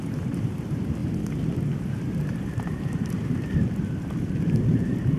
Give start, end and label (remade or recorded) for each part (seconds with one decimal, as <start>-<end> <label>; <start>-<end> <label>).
0.0-3.6 remade; 3.6-4.7 recorded; 4.7-5.2 remade